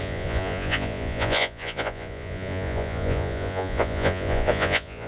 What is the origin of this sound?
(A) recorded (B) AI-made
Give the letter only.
B